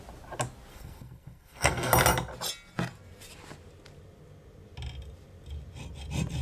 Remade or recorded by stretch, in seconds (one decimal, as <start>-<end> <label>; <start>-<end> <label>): 0.0-0.7 recorded; 0.7-1.9 remade; 1.9-6.4 recorded